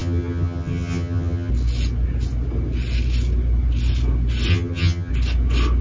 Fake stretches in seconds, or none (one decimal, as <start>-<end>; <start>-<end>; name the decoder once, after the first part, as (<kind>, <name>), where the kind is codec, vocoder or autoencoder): 0.0-1.5 (vocoder, HiFi-GAN); 4.5-5.1